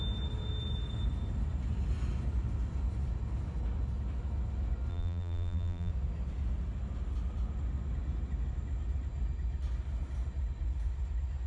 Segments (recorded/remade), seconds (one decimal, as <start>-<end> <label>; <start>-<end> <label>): 0.0-4.9 recorded; 4.9-5.9 remade; 5.9-11.5 recorded